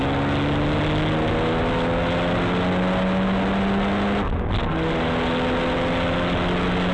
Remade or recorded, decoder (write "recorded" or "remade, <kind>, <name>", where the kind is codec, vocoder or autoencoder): recorded